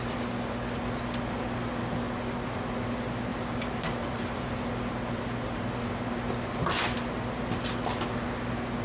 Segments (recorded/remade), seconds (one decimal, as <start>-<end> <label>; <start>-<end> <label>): 0.0-3.3 recorded; 3.3-4.6 remade; 4.6-8.8 recorded

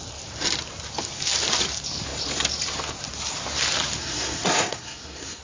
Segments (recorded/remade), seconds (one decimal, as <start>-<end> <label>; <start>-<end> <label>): 0.0-4.0 recorded; 4.0-5.4 remade

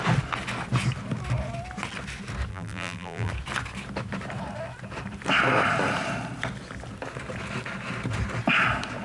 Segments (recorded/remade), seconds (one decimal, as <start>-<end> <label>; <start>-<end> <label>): 0.0-2.5 recorded; 2.5-3.3 remade; 3.3-9.0 recorded